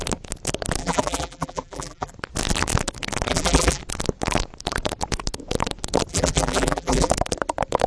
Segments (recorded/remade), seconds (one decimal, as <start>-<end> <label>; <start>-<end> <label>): 0.0-0.8 recorded; 0.8-2.1 remade; 2.1-3.3 recorded; 3.3-3.8 remade; 3.8-6.1 recorded; 6.1-7.1 remade; 7.1-7.9 recorded